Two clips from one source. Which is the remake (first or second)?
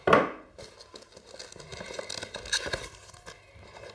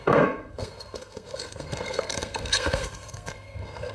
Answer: second